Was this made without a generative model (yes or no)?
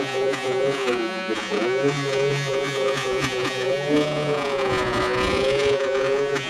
no